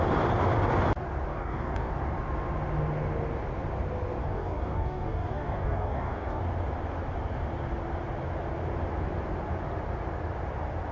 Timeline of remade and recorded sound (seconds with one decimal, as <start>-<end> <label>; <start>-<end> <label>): 0.0-1.3 recorded; 1.3-1.9 remade; 1.9-4.2 recorded; 4.2-6.4 remade; 6.4-10.9 recorded